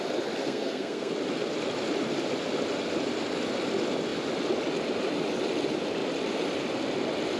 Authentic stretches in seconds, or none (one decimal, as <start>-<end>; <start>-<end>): 0.0-0.4; 1.1-7.4